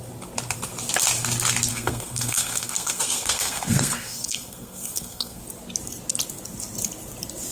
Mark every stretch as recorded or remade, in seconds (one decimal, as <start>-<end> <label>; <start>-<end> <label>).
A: 0.0-1.7 recorded; 1.7-5.4 remade; 5.4-7.5 recorded